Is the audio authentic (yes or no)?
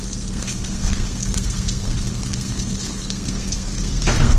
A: no